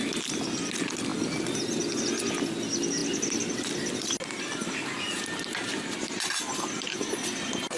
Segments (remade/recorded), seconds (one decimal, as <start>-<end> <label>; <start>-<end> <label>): 0.0-7.8 recorded